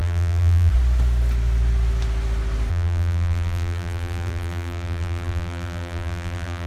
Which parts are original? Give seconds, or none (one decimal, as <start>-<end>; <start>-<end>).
0.7-2.7